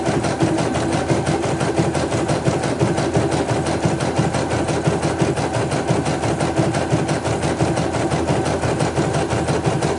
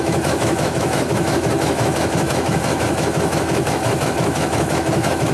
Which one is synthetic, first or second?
second